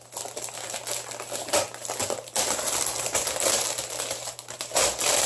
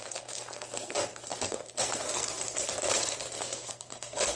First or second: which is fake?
second